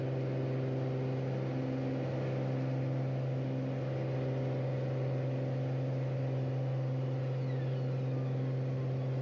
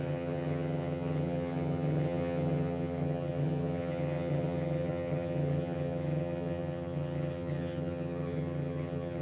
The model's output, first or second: second